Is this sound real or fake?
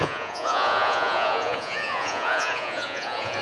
fake